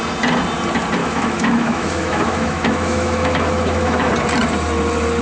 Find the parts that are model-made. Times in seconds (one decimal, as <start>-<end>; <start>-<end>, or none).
1.0-4.1